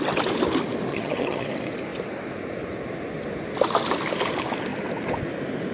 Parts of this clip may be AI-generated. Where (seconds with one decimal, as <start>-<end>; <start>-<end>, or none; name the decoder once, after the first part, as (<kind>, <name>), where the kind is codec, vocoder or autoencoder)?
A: 0.9-1.5 (vocoder, HiFi-GAN)